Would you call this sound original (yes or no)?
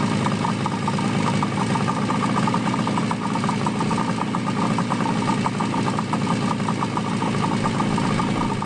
yes